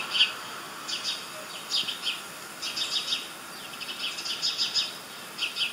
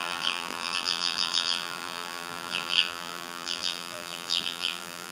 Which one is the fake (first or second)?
second